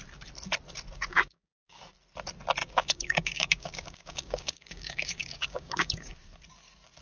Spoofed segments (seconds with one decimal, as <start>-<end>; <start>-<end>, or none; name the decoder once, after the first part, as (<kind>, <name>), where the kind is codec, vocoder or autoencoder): 1.1-1.8 (codec, DAC); 2.6-6.1